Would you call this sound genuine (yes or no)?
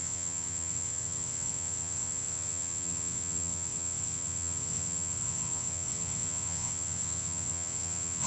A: no